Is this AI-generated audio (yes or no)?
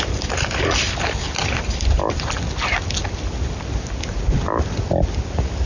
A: no